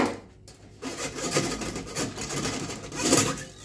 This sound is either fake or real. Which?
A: real